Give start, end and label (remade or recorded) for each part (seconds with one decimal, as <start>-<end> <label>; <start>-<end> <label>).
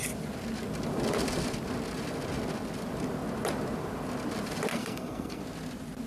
0.0-4.7 recorded; 4.7-5.4 remade; 5.4-6.1 recorded